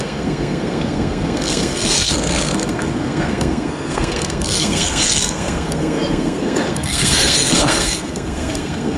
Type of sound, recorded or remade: remade